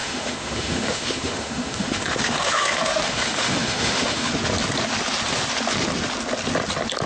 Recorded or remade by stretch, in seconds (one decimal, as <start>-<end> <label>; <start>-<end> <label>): 0.0-4.3 remade; 4.3-7.1 recorded